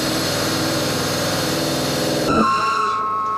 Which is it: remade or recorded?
remade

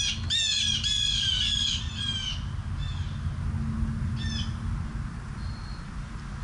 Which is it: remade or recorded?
recorded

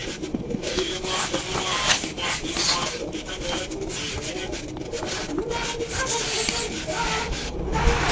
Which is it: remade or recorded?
recorded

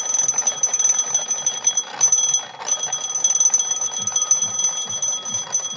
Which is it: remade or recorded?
recorded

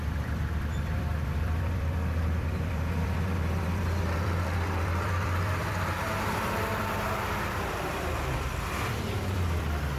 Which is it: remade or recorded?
remade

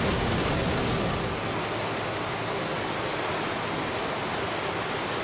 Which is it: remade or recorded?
recorded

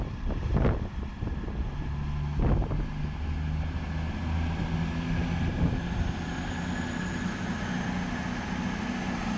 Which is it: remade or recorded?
recorded